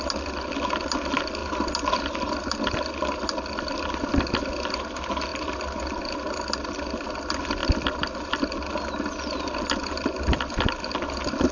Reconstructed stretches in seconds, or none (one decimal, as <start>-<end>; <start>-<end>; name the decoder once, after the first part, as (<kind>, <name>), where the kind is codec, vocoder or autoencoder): none